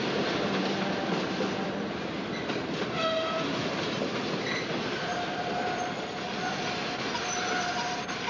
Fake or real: real